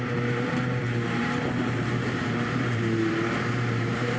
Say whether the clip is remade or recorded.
remade